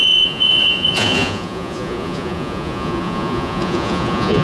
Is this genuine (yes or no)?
no